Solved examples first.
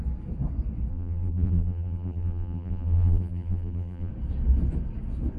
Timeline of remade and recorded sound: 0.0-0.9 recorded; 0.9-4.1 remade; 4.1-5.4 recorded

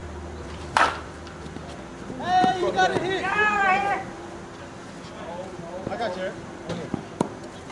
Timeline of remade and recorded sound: 0.0-4.2 remade; 4.2-5.8 recorded; 5.8-7.7 remade

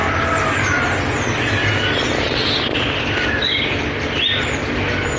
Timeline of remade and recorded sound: 0.0-5.2 recorded

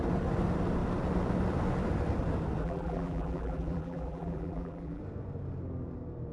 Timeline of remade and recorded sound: 0.0-2.6 recorded; 2.6-5.0 remade; 5.0-6.3 recorded

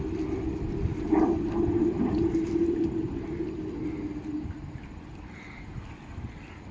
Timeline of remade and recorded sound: 0.0-0.9 recorded; 0.9-3.3 remade; 3.3-6.7 recorded

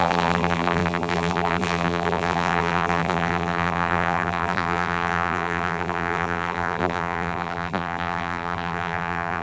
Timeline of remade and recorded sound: 0.0-9.4 remade

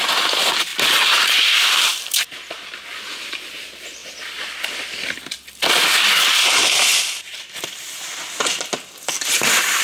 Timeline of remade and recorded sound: 0.0-1.9 recorded; 1.9-2.5 remade; 2.5-4.0 recorded; 4.0-4.8 remade; 4.8-6.9 recorded; 6.9-7.8 remade; 7.8-9.8 recorded